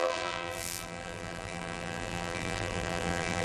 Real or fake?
fake